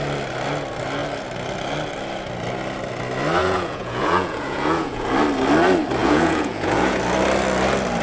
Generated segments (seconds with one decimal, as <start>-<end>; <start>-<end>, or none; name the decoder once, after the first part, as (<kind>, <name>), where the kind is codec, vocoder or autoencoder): 3.4-5.1 (vocoder, Vocos); 6.0-7.0